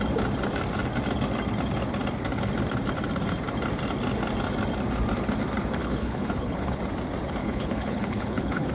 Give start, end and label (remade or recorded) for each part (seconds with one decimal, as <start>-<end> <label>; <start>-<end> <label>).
0.0-5.8 recorded; 5.8-6.8 remade; 6.8-7.4 recorded; 7.4-8.7 remade